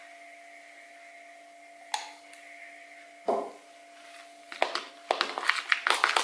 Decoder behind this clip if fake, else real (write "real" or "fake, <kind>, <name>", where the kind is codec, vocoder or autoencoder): real